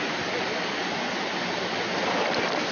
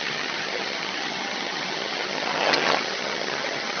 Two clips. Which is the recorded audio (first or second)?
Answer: first